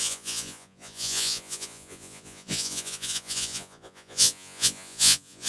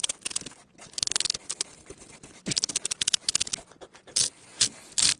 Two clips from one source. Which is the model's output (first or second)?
first